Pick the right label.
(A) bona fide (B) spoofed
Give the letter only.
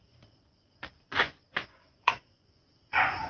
B